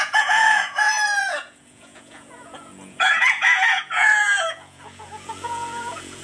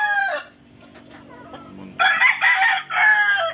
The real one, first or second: second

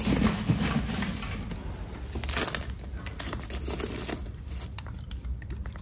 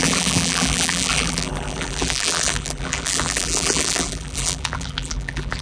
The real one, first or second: first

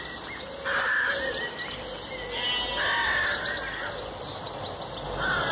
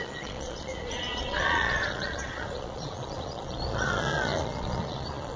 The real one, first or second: first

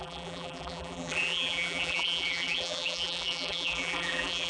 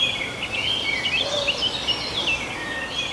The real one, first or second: second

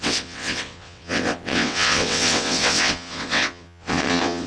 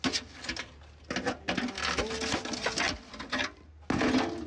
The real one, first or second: second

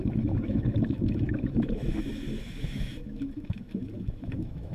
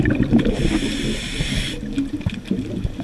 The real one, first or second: second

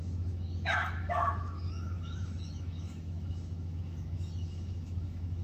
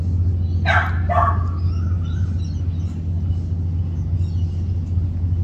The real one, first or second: second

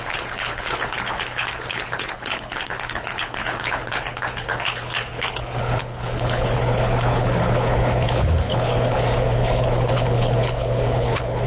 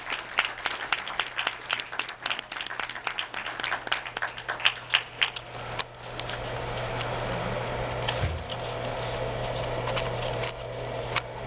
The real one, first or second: second